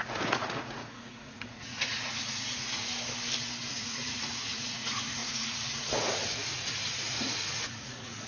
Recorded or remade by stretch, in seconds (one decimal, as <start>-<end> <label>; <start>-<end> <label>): 0.0-2.8 remade; 2.8-3.7 recorded; 3.7-8.3 remade